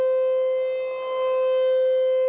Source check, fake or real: real